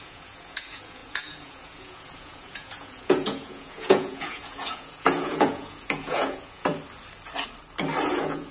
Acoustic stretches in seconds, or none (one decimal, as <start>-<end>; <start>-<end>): 6.7-8.1